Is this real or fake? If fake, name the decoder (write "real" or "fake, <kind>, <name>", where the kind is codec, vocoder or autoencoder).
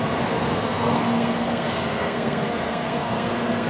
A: fake, codec, SNAC